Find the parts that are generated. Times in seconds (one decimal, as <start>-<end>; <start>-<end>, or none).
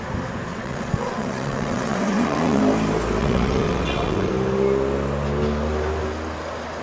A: 0.5-2.6; 3.2-4.3